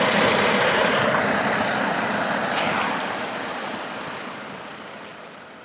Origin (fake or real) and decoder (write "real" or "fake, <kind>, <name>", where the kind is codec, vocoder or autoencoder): fake, vocoder, BigVGAN v2